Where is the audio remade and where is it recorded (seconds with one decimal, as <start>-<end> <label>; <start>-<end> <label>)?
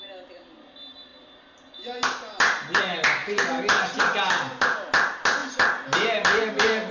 0.0-6.9 recorded